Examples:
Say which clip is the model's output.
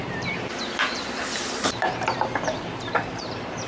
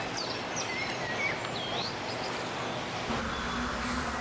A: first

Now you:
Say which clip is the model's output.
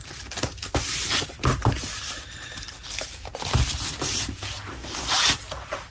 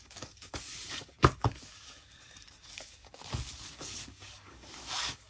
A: second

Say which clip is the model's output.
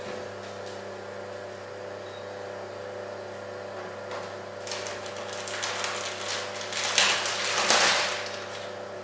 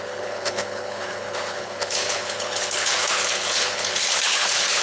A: second